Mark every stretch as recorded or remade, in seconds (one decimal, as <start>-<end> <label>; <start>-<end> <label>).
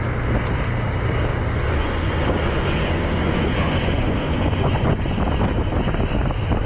0.0-1.3 recorded; 1.3-5.2 remade; 5.2-6.7 recorded